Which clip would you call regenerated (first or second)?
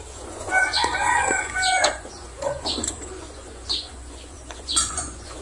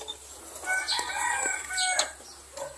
first